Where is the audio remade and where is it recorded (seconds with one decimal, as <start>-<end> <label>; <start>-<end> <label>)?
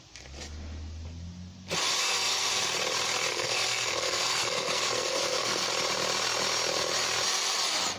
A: 0.0-2.0 recorded; 2.0-2.5 remade; 2.5-3.3 recorded; 3.3-5.7 remade; 5.7-8.0 recorded